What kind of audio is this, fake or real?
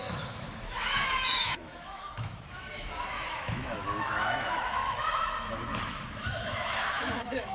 fake